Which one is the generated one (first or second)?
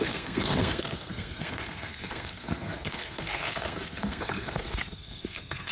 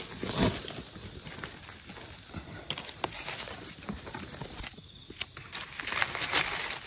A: first